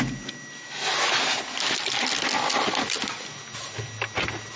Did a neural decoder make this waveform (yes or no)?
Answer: no